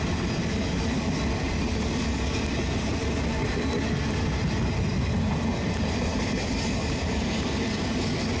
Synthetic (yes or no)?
no